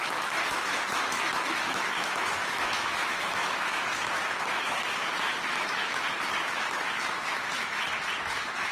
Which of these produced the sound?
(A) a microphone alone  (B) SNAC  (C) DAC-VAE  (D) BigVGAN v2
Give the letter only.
C